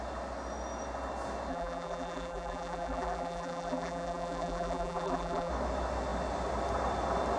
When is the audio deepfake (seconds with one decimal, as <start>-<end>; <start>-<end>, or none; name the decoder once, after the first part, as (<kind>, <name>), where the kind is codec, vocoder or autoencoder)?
1.5-5.5 (vocoder, BigVGAN v2)